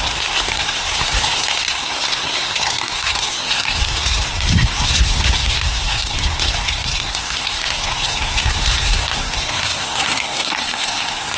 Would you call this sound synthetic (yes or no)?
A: yes